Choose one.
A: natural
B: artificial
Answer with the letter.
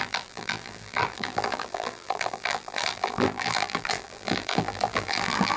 B